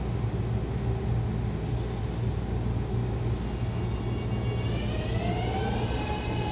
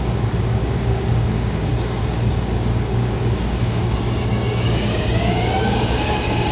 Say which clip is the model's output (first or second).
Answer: second